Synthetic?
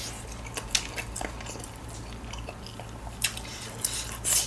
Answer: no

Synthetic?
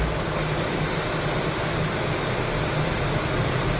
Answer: no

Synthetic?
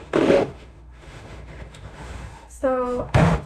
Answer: yes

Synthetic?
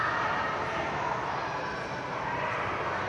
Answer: no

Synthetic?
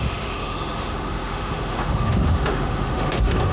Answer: yes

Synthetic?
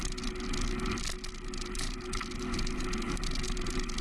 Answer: no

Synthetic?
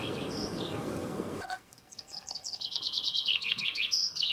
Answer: yes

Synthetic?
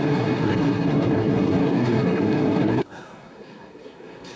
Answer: yes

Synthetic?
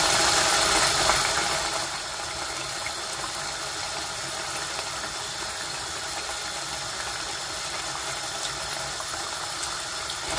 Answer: no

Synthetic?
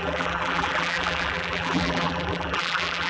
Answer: yes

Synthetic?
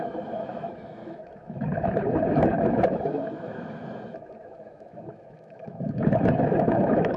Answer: yes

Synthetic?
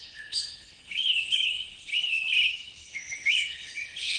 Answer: yes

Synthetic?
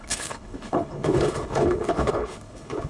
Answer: yes